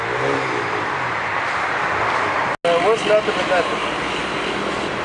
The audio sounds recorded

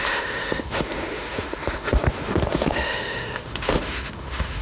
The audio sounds remade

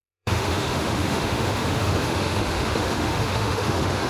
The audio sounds remade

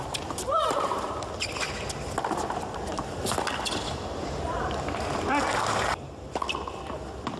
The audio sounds recorded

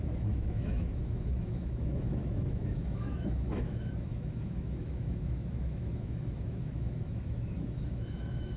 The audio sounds remade